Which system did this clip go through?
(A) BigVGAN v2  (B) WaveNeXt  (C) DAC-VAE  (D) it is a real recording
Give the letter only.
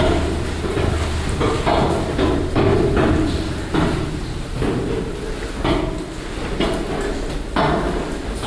D